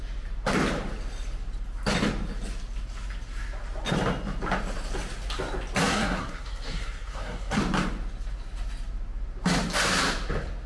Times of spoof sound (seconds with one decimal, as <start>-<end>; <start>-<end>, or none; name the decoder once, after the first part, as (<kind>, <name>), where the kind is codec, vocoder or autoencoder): 5.9-7.6 (codec, SNAC)